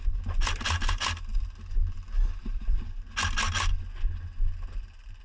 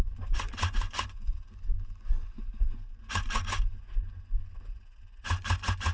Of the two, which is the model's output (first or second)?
second